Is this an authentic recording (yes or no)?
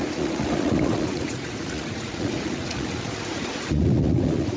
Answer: no